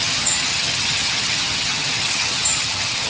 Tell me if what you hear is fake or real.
fake